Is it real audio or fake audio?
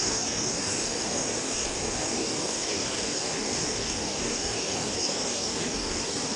fake